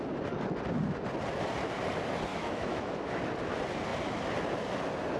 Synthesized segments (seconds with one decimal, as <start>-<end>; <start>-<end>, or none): 2.3-3.2